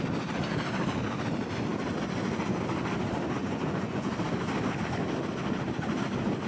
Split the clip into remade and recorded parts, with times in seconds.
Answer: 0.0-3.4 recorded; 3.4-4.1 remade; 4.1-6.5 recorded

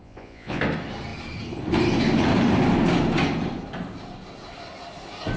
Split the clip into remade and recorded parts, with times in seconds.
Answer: 0.0-0.6 remade; 0.6-5.4 recorded

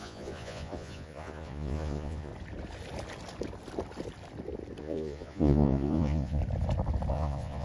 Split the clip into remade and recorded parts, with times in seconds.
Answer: 0.0-2.3 remade; 2.3-4.8 recorded; 4.8-6.4 remade; 6.4-7.1 recorded; 7.1-7.6 remade

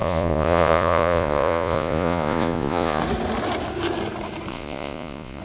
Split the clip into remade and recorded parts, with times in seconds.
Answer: 0.0-3.0 remade; 3.0-4.5 recorded; 4.5-5.4 remade

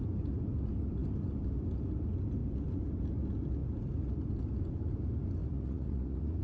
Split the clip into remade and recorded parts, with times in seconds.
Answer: 0.0-5.4 recorded; 5.4-6.4 remade

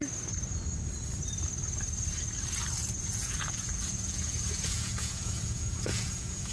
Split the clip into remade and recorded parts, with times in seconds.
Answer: 0.0-2.8 recorded; 2.8-6.5 remade

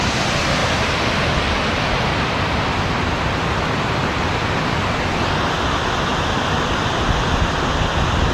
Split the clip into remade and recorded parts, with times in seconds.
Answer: 0.0-8.3 recorded

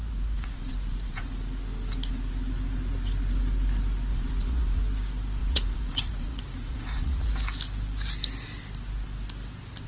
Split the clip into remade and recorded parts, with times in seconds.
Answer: 0.0-1.3 remade; 1.3-4.1 recorded; 4.1-4.8 remade; 4.8-5.4 recorded; 5.4-7.3 remade; 7.3-9.9 recorded